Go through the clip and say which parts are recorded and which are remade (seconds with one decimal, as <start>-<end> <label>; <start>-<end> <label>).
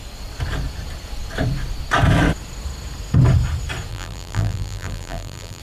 0.0-3.9 recorded; 3.9-5.6 remade